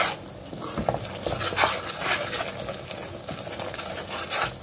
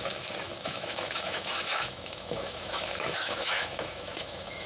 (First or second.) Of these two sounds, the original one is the first